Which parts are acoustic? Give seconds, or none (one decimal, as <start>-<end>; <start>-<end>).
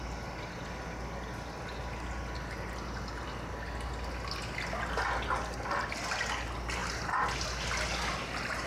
0.0-8.7